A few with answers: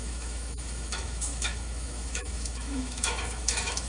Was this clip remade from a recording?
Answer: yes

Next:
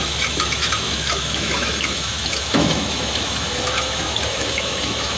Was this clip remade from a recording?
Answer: yes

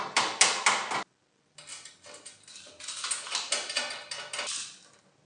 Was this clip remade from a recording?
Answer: no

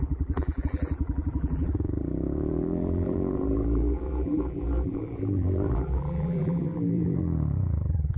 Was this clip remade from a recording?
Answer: yes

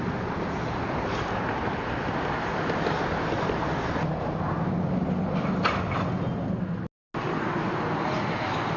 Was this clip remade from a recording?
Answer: no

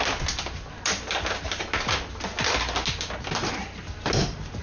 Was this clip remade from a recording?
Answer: no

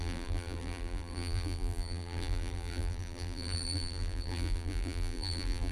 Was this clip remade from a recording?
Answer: yes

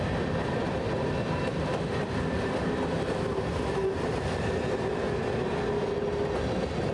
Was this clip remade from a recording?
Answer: no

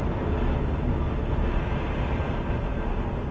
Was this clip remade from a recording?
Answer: no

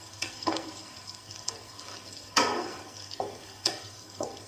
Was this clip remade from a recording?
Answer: yes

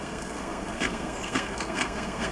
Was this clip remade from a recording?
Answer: yes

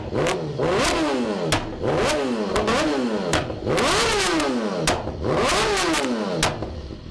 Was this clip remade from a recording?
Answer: no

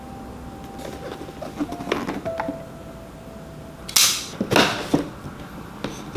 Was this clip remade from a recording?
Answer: no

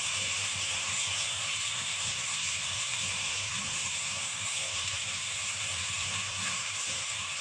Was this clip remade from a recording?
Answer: yes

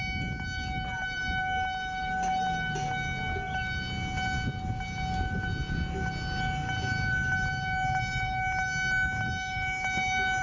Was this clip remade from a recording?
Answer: no